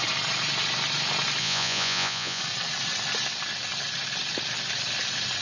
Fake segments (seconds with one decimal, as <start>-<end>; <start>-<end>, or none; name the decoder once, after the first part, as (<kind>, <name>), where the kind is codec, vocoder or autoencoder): 1.4-2.4 (vocoder, Vocos)